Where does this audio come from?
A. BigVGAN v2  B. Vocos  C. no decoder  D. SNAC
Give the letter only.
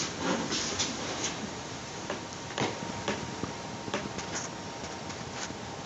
A